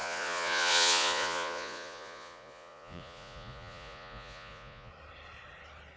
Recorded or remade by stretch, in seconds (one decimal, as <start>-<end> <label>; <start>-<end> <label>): 0.0-4.9 remade; 4.9-6.0 recorded